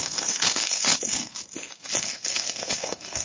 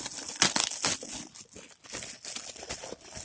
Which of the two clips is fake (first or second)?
first